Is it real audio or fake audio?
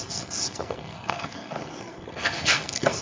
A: fake